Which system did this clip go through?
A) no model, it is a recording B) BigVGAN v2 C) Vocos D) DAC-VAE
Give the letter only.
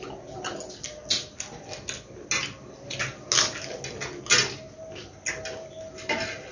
A